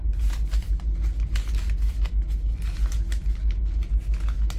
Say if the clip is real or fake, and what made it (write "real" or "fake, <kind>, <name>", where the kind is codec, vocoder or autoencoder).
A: real